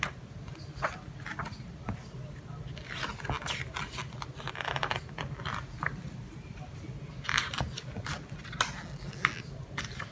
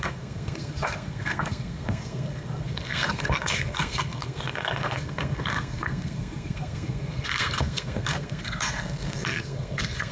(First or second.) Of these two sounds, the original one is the first